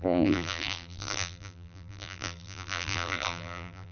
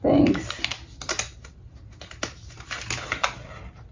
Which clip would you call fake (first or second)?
first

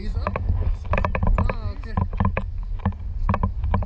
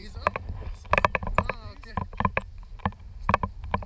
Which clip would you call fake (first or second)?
second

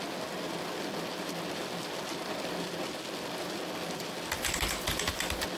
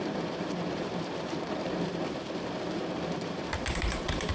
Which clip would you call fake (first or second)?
second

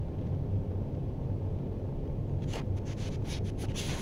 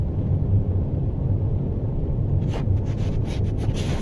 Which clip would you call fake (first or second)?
second